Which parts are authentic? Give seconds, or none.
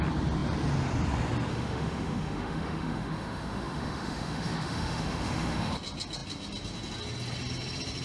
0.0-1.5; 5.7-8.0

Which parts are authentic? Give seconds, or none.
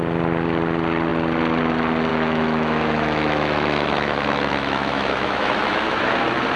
0.0-2.1; 6.1-6.6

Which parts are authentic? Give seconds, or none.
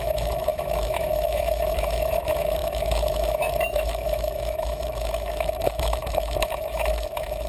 none